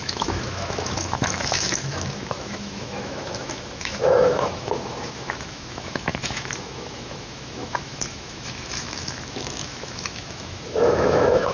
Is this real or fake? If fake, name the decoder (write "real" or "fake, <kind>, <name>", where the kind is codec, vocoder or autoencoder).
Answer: fake, autoencoder, DAC-VAE